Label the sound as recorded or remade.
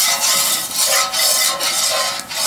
recorded